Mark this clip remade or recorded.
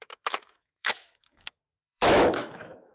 remade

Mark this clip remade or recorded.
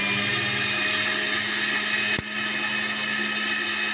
recorded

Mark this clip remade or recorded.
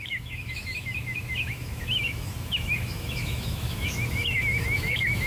remade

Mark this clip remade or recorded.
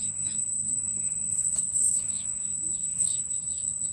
remade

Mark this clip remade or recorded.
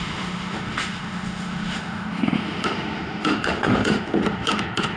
remade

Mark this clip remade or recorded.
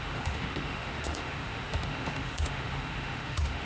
remade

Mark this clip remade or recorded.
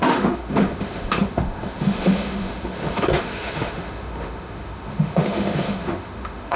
remade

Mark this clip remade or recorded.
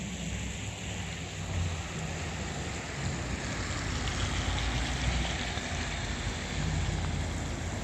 recorded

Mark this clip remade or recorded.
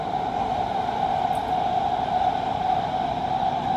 recorded